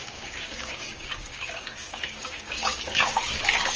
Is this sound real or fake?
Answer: fake